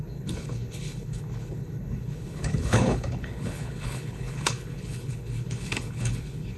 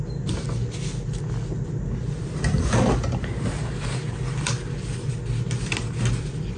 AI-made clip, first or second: first